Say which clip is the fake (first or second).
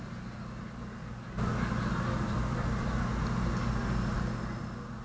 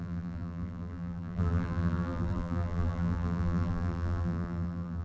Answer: second